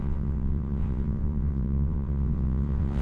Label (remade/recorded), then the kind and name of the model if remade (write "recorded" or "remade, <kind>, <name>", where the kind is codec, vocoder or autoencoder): remade, vocoder, WaveNeXt